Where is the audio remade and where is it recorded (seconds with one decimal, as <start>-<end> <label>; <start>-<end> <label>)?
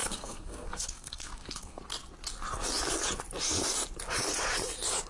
0.0-1.8 remade; 1.8-5.1 recorded